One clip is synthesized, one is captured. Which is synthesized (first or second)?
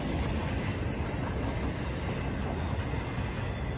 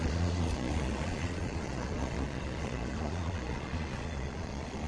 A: second